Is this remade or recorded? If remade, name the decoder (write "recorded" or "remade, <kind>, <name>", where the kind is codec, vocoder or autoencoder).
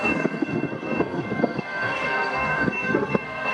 remade, codec, SNAC